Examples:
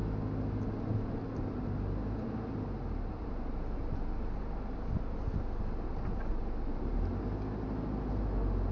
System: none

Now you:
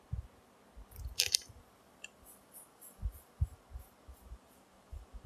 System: none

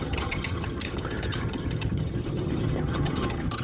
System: vocoder, HiFi-GAN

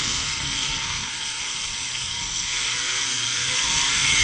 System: codec, SNAC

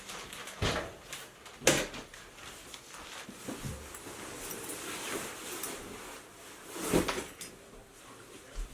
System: none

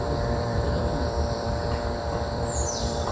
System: vocoder, BigVGAN v2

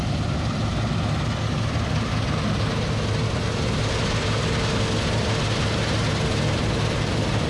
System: none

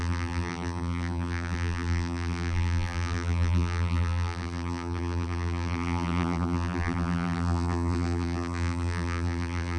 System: vocoder, BigVGAN v2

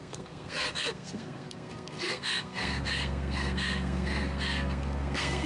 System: codec, SNAC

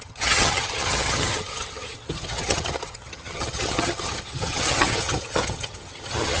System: vocoder, HiFi-GAN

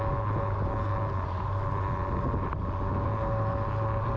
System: none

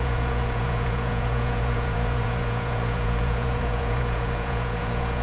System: vocoder, Vocos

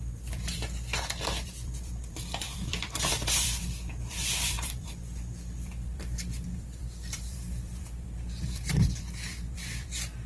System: vocoder, BigVGAN v2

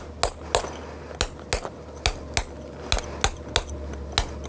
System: none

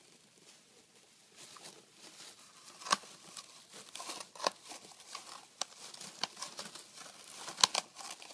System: none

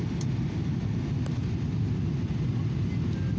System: none